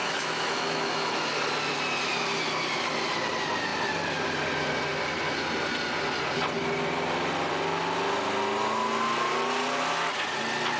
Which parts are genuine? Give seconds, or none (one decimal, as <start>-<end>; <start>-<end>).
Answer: 1.2-10.8